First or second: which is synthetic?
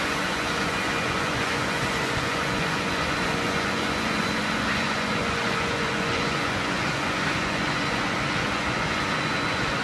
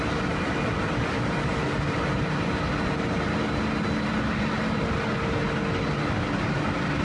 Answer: first